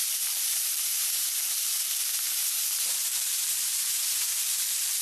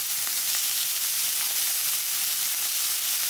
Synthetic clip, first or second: first